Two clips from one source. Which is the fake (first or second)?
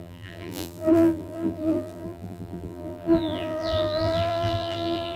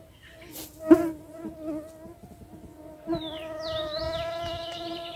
first